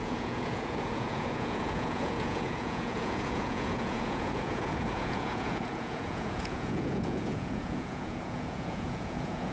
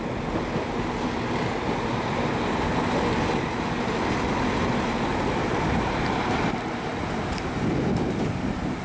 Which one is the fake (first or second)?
first